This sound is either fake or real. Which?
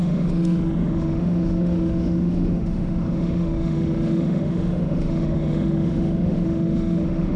fake